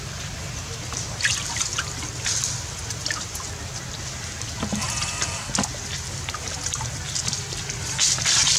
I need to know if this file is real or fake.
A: real